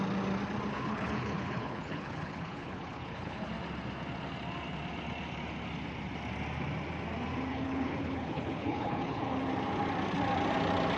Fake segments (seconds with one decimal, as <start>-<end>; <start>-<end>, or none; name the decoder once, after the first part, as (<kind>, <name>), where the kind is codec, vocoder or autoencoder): 0.7-3.5 (codec, HILCodec); 7.5-9.3